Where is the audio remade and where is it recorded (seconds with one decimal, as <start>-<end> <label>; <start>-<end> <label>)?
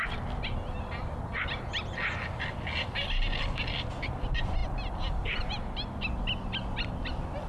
0.0-7.5 recorded